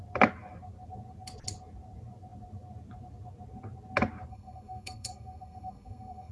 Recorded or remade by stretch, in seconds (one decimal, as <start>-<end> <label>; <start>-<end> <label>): 0.0-4.3 recorded; 4.3-6.3 remade